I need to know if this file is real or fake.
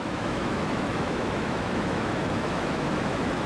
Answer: fake